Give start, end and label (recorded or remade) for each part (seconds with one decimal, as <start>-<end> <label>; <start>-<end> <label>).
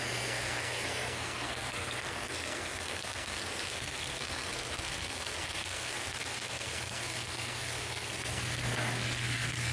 0.0-9.7 remade